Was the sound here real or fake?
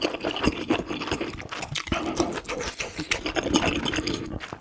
real